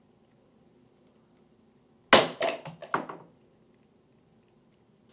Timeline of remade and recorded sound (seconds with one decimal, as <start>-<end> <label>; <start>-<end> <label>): 0.0-5.1 recorded